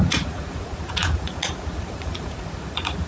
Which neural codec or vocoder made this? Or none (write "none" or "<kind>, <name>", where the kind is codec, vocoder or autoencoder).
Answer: vocoder, Vocos